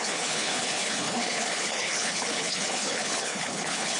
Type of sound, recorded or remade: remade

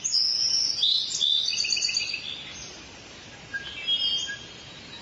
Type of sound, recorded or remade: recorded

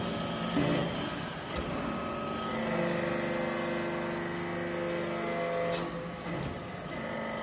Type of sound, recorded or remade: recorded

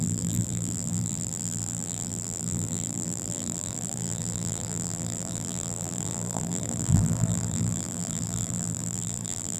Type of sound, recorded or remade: remade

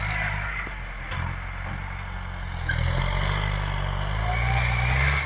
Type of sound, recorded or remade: recorded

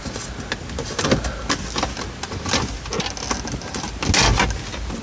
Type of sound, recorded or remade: recorded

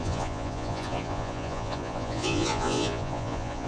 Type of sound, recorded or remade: remade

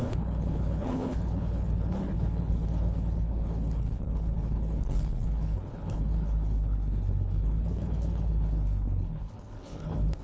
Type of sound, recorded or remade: remade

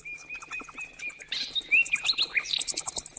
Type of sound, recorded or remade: recorded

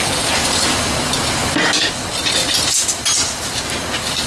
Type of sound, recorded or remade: recorded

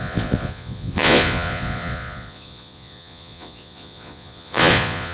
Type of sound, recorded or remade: remade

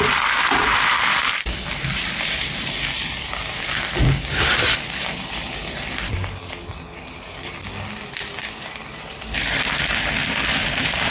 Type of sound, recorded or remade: remade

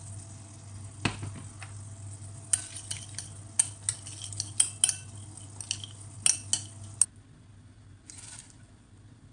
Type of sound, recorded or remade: recorded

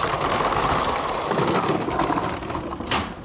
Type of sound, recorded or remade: recorded